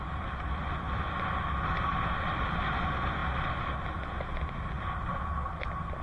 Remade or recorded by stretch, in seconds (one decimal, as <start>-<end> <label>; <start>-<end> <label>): 0.0-6.0 recorded